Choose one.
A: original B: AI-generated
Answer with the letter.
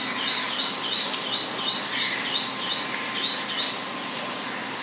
A